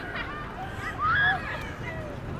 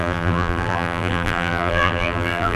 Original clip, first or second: first